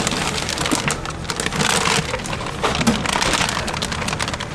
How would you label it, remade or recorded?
recorded